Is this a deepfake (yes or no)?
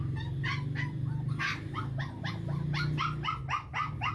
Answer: no